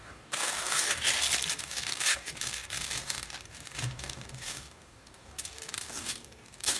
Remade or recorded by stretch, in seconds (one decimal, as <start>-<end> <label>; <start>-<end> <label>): 0.0-1.1 remade; 1.1-1.6 recorded; 1.6-6.8 remade